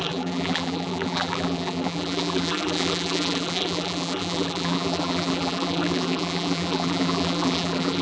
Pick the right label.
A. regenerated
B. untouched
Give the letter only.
A